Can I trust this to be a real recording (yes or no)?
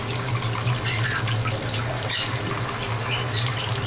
yes